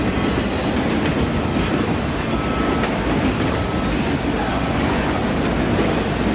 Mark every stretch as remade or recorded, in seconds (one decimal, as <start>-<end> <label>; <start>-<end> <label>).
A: 0.0-4.5 recorded; 4.5-5.2 remade; 5.2-6.3 recorded